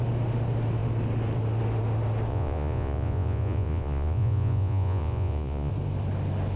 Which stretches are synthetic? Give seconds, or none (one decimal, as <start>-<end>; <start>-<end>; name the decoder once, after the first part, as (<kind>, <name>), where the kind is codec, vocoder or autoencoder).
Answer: 2.3-5.7 (vocoder, Vocos)